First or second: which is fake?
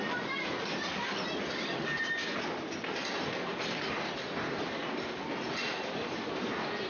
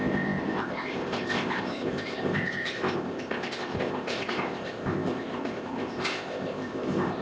second